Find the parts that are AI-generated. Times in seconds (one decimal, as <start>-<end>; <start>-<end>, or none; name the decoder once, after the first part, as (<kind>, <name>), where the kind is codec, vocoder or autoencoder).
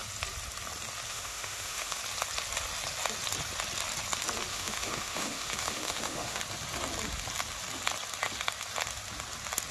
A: 1.1-2.0 (autoencoder, DAC-VAE); 4.5-6.4